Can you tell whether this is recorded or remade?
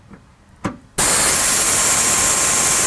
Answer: recorded